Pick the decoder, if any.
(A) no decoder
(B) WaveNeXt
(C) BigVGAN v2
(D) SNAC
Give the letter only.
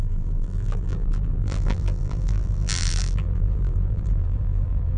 C